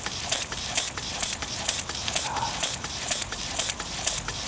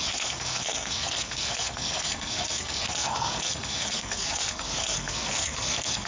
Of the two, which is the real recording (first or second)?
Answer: first